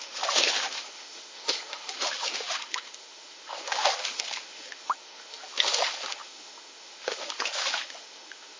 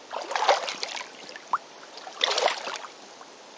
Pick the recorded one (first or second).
second